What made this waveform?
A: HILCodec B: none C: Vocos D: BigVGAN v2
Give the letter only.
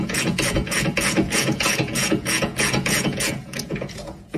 C